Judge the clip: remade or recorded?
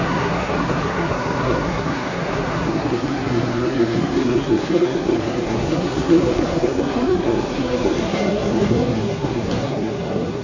remade